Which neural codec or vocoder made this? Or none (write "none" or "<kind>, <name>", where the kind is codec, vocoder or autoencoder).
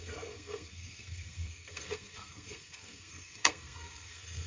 codec, SNAC